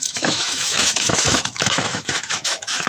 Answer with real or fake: fake